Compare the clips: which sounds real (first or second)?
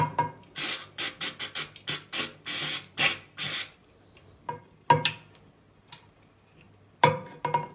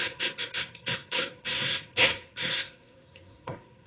first